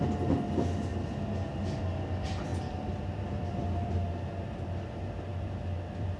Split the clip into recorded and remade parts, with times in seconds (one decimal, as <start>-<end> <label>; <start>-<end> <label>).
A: 0.0-2.5 recorded; 2.5-3.9 remade; 3.9-5.3 recorded; 5.3-6.2 remade